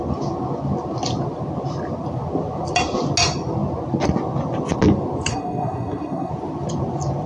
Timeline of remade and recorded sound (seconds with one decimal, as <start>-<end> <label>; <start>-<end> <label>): 0.0-5.3 recorded; 5.3-6.3 remade; 6.3-7.3 recorded